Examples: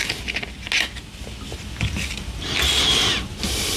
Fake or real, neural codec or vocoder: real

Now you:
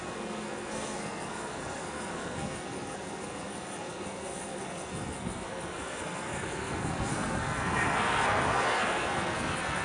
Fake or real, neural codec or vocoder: fake, codec, SNAC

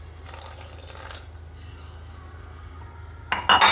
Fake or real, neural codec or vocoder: real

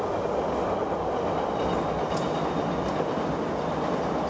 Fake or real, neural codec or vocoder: real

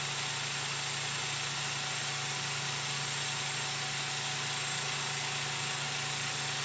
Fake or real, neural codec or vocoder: real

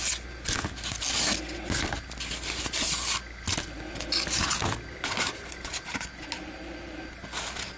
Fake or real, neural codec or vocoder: real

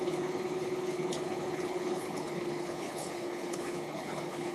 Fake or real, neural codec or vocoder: fake, codec, HILCodec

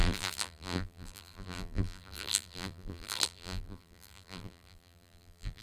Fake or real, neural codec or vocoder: fake, vocoder, BigVGAN v2